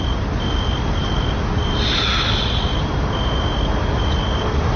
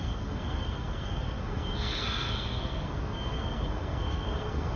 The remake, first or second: second